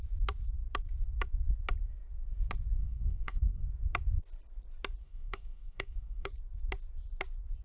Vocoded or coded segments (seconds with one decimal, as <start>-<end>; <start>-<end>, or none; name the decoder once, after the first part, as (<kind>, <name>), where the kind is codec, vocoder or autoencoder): 2.8-3.6 (codec, DAC); 5.0-6.3